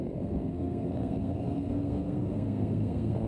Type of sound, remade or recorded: remade